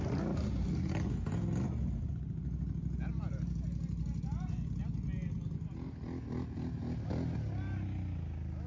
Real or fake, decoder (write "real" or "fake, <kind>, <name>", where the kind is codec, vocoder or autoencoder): real